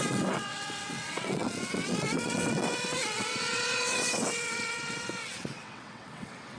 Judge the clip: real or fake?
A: fake